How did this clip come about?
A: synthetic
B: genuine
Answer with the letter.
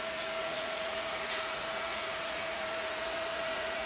A